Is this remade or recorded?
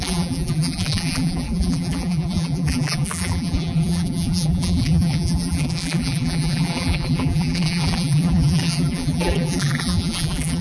remade